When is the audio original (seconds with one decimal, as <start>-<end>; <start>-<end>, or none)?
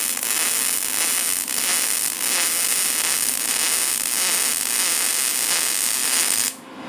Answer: 0.0-6.0